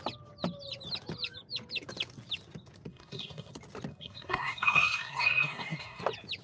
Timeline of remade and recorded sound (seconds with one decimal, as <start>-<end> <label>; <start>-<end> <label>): 0.0-2.9 recorded; 2.9-3.5 remade; 3.5-3.9 recorded; 3.9-6.0 remade; 6.0-6.4 recorded